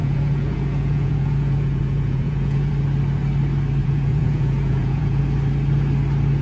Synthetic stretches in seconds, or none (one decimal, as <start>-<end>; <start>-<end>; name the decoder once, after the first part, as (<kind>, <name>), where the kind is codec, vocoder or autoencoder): 0.0-2.7 (vocoder, Vocos); 3.8-5.2

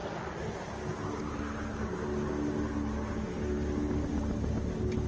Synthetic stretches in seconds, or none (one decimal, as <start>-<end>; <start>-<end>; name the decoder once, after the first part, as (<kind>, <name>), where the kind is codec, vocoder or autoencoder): none